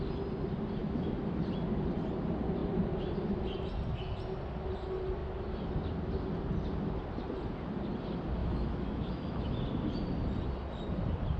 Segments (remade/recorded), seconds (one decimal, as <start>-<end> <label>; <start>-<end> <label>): 0.0-0.8 recorded; 0.8-1.4 remade; 1.4-8.4 recorded; 8.4-9.5 remade; 9.5-11.4 recorded